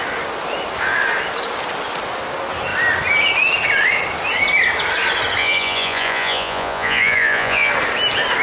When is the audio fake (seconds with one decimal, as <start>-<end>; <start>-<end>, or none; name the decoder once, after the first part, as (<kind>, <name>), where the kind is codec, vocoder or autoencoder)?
5.4-7.7 (vocoder, Vocos)